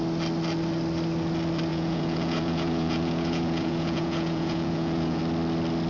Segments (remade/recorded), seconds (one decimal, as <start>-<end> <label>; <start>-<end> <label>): 0.0-1.7 recorded; 1.7-5.2 remade; 5.2-5.9 recorded